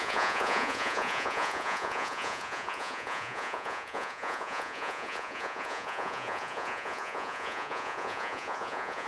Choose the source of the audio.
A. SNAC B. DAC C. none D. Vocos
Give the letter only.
D